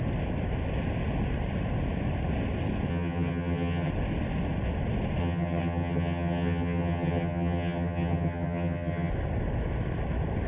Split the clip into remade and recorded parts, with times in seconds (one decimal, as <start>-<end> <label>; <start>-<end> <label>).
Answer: 0.0-2.9 recorded; 2.9-3.9 remade; 3.9-5.2 recorded; 5.2-9.1 remade; 9.1-10.5 recorded

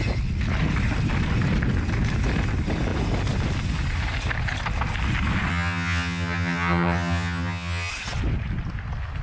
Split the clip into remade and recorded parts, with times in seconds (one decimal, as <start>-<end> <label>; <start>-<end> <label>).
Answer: 0.0-5.5 recorded; 5.5-7.9 remade; 7.9-9.2 recorded

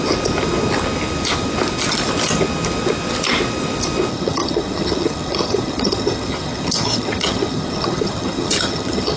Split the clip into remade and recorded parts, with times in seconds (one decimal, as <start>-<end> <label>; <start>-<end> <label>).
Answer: 0.0-4.1 recorded; 4.1-9.2 remade

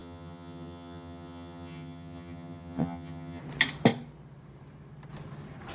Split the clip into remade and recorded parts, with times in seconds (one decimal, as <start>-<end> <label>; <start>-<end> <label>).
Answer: 0.0-3.4 remade; 3.4-5.7 recorded